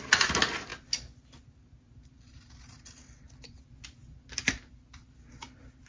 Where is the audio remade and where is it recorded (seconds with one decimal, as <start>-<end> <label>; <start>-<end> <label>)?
0.0-5.9 recorded